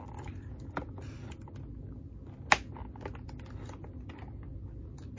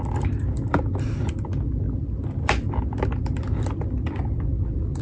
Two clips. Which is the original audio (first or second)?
first